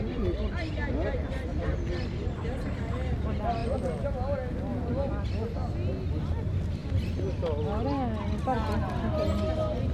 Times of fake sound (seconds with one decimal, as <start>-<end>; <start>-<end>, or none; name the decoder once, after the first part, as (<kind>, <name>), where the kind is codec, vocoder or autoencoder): none